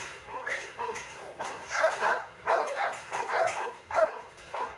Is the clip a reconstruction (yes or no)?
yes